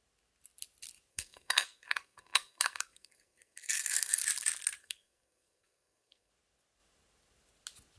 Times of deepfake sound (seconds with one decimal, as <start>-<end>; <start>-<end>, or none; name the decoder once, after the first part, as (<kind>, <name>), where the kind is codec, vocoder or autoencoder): 1.1-4.2 (codec, SNAC); 4.8-6.3